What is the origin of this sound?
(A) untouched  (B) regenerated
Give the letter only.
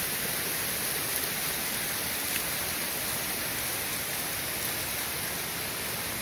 A